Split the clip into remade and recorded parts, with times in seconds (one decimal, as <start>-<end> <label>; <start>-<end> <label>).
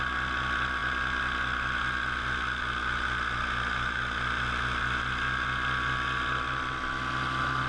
0.0-7.7 recorded